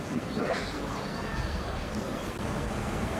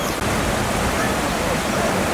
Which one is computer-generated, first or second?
first